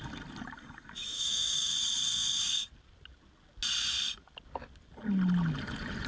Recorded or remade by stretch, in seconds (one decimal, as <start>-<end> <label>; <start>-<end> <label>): 0.0-1.0 recorded; 1.0-1.7 remade; 1.7-6.1 recorded